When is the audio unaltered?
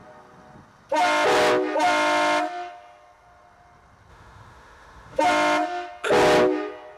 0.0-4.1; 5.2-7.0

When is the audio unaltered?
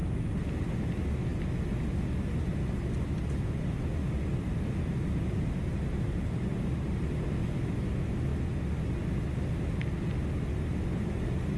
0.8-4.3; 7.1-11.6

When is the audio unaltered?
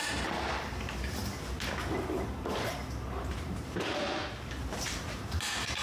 1.2-3.3; 4.2-4.8